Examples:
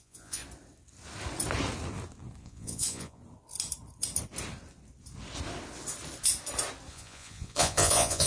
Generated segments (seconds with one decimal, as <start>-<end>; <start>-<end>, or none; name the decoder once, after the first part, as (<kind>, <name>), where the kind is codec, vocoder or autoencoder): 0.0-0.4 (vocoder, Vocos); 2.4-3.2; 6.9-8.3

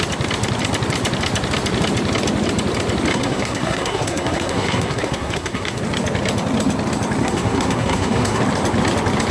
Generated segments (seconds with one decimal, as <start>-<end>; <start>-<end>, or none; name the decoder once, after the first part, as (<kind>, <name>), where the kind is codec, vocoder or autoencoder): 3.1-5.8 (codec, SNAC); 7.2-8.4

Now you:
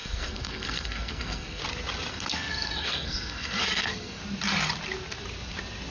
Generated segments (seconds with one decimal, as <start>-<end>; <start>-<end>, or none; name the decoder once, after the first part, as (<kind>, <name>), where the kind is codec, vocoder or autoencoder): 0.0-1.6 (codec, SNAC); 2.1-4.2